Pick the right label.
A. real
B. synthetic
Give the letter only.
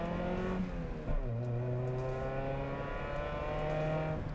A